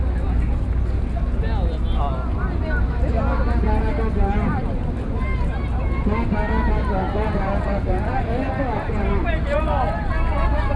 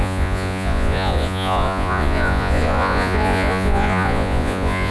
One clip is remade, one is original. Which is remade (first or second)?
second